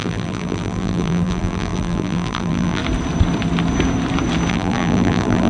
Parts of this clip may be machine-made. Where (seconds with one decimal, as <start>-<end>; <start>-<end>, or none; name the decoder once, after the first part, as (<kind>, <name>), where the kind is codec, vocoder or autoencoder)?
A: 0.0-2.8 (vocoder, BigVGAN v2); 4.5-5.5